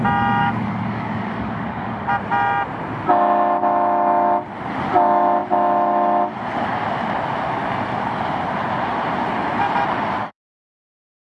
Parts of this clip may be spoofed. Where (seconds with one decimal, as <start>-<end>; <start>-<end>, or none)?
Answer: 0.4-2.1; 10.2-10.8